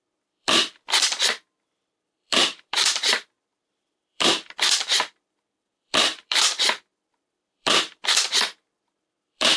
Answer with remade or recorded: remade